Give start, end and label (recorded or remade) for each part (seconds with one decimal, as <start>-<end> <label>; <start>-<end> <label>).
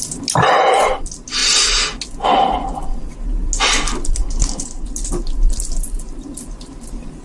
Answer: 0.0-7.2 recorded